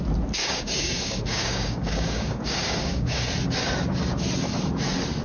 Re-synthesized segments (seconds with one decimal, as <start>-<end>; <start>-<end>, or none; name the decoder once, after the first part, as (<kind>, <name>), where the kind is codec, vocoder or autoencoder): 0.4-3.3 (codec, DAC)